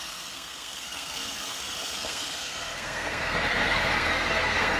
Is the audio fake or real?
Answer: fake